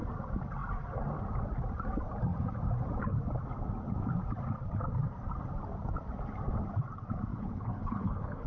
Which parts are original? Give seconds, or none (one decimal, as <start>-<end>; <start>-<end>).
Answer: 0.0-7.3